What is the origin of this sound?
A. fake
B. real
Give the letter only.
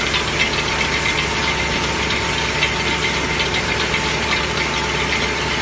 B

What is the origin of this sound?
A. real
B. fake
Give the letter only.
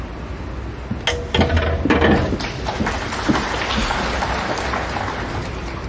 A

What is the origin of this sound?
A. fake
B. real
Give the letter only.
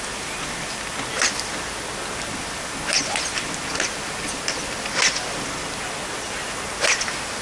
B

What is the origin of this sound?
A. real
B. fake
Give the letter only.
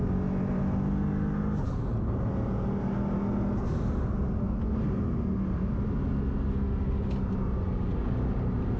A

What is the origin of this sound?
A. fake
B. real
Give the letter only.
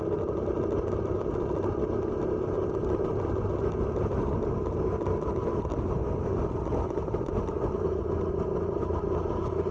B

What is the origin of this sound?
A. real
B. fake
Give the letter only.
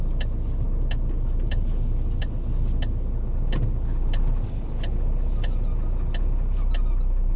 A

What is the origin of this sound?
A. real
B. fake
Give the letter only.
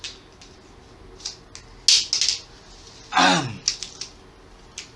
A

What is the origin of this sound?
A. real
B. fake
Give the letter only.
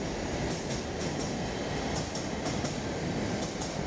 A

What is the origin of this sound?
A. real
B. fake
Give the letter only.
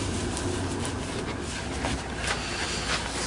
A